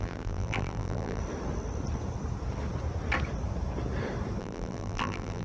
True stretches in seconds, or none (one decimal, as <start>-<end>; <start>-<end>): 1.2-4.4